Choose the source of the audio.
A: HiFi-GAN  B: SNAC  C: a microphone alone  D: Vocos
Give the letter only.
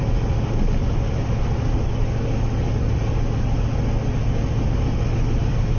C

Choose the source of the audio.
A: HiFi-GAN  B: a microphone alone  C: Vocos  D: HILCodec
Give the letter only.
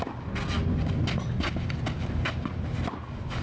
B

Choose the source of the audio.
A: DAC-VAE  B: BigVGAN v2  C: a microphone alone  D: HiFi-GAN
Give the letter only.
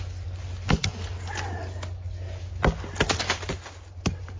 C